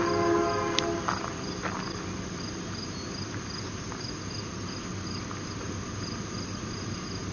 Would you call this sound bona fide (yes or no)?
yes